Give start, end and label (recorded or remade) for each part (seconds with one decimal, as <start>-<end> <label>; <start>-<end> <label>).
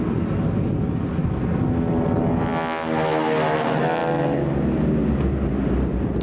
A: 0.0-6.2 recorded